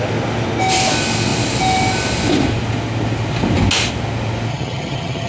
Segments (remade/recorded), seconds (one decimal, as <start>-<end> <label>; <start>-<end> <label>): 0.0-4.5 recorded; 4.5-5.3 remade